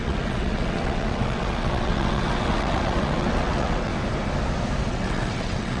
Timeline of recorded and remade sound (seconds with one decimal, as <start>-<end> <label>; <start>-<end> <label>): 0.0-3.9 remade; 3.9-4.9 recorded; 4.9-5.8 remade